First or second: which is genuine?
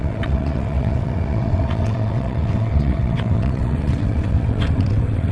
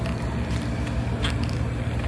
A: second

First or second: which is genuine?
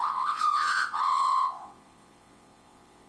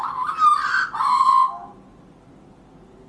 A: second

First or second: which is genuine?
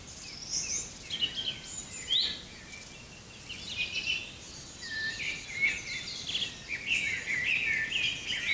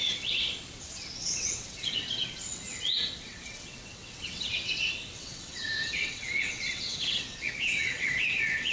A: first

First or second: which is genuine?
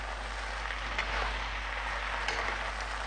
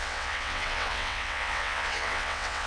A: first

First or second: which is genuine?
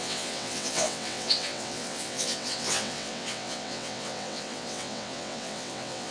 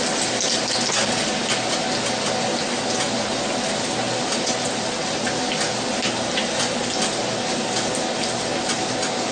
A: second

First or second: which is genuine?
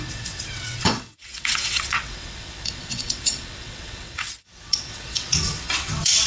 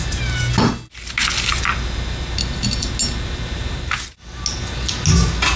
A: second